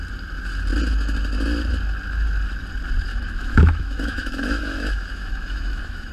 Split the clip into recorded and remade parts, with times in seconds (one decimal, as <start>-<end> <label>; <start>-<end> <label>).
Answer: 0.0-3.1 recorded; 3.1-6.1 remade